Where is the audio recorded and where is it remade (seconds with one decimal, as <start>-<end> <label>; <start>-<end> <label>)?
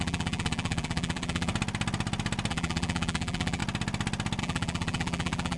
0.0-1.5 remade; 1.5-2.5 recorded; 2.5-3.6 remade; 3.6-4.4 recorded; 4.4-5.6 remade